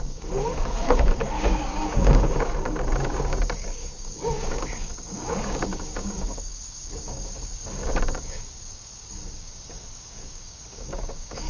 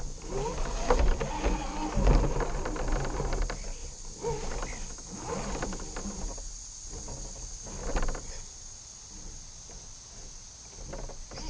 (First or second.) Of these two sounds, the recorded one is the second